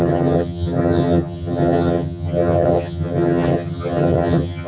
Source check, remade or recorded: remade